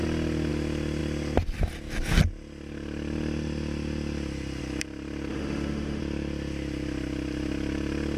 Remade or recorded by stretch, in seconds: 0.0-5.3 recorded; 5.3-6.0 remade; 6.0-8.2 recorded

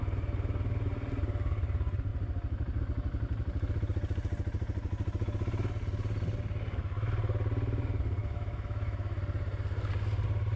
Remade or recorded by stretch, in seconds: 0.0-8.2 recorded; 8.2-9.2 remade; 9.2-10.6 recorded

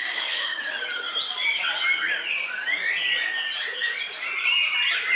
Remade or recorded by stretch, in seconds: 0.0-0.6 remade; 0.6-5.2 recorded